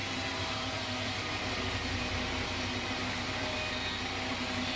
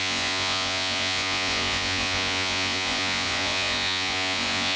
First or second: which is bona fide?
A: first